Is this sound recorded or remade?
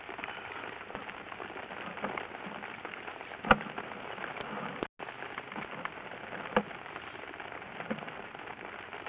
recorded